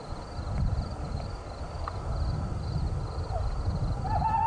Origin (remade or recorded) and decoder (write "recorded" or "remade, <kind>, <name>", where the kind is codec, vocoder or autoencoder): recorded